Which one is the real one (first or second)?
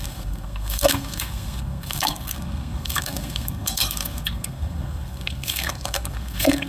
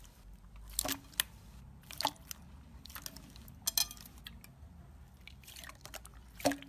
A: second